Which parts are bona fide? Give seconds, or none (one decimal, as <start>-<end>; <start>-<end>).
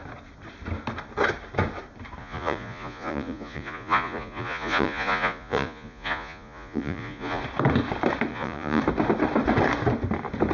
0.0-2.2; 7.4-8.3; 8.8-10.5